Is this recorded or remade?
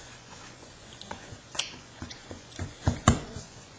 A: remade